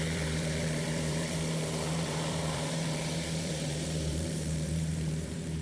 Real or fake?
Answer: fake